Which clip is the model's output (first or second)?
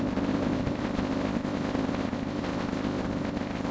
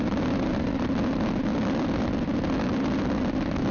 first